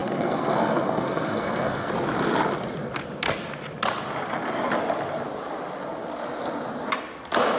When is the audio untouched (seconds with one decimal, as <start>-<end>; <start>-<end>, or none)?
1.9-7.6

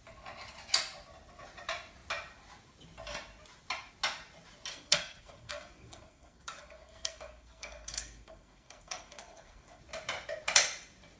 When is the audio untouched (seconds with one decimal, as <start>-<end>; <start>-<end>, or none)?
0.0-4.7; 9.8-11.2